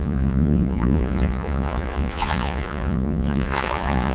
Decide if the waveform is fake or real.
fake